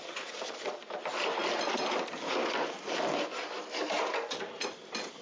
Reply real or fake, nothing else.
real